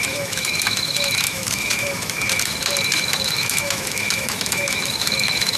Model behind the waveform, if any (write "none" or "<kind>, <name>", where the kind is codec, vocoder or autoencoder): autoencoder, DAC-VAE